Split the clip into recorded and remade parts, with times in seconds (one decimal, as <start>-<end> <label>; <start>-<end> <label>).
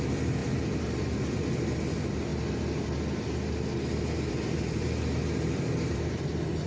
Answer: 0.0-2.3 remade; 2.3-4.3 recorded; 4.3-6.7 remade